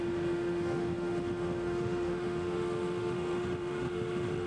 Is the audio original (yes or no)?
no